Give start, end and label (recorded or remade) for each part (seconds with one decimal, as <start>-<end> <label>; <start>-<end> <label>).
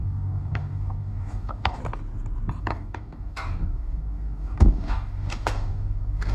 0.0-1.8 remade; 1.8-2.6 recorded; 2.6-6.3 remade